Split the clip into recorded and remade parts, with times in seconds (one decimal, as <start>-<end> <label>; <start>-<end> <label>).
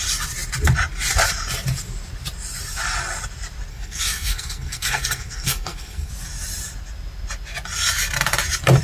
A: 0.0-3.7 recorded; 3.7-6.1 remade; 6.1-8.8 recorded